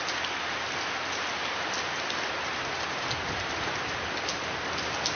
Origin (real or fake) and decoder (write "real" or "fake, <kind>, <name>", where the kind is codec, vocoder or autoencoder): real